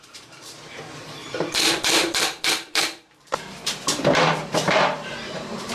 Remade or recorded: remade